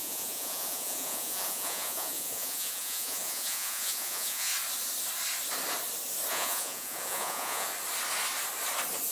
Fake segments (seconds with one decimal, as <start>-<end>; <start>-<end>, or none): 0.0-4.5; 6.3-7.7